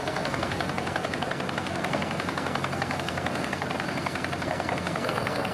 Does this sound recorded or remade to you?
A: remade